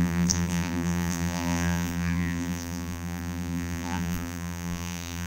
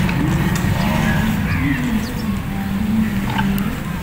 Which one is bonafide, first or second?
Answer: second